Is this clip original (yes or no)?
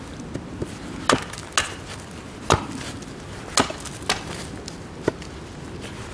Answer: yes